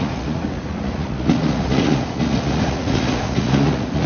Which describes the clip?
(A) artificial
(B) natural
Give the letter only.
A